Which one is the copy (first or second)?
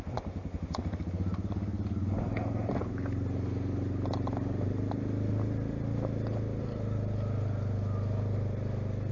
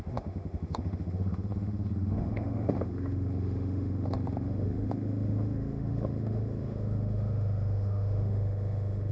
second